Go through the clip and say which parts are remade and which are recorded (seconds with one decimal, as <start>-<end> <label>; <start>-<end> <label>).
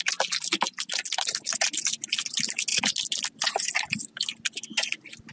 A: 0.0-5.3 recorded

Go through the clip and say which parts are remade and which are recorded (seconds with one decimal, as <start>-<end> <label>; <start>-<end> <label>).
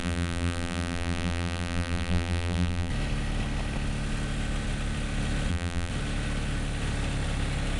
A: 0.0-2.9 remade; 2.9-5.5 recorded; 5.5-5.9 remade; 5.9-7.8 recorded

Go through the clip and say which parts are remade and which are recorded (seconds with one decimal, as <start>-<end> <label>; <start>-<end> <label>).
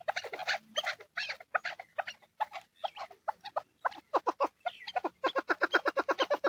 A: 0.0-2.7 remade; 2.7-4.2 recorded; 4.2-6.5 remade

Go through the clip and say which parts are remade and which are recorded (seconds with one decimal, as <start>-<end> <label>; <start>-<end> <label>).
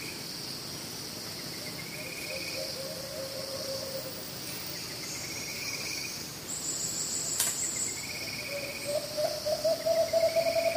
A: 0.0-5.5 recorded; 5.5-6.1 remade; 6.1-10.8 recorded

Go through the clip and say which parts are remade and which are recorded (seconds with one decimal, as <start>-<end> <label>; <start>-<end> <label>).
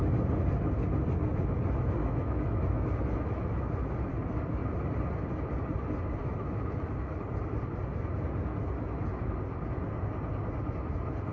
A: 0.0-2.0 recorded; 2.0-4.1 remade; 4.1-6.2 recorded; 6.2-7.1 remade; 7.1-11.3 recorded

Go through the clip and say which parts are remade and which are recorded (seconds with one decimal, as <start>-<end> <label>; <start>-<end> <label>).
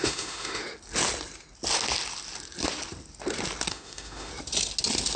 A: 0.0-0.6 remade; 0.6-3.7 recorded; 3.7-4.3 remade; 4.3-5.2 recorded